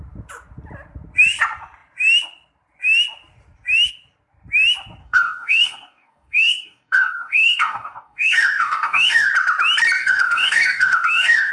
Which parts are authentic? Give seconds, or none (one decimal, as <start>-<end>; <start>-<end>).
0.0-5.0; 9.3-10.0